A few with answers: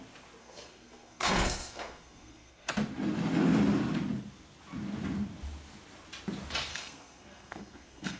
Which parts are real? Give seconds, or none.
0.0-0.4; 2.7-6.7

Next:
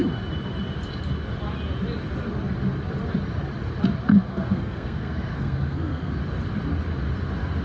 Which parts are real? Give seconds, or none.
0.0-4.1; 6.2-7.6